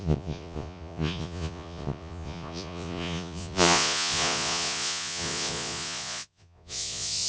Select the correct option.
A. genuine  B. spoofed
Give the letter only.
B